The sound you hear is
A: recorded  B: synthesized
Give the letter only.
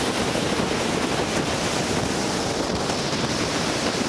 A